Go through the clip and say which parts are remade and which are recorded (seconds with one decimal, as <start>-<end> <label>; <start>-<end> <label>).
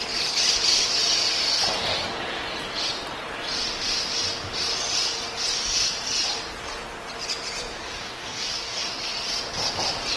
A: 0.0-8.0 recorded; 8.0-8.8 remade; 8.8-10.2 recorded